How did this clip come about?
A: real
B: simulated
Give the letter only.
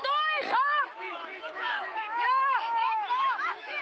B